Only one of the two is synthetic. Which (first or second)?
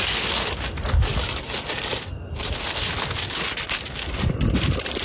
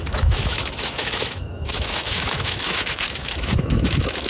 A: second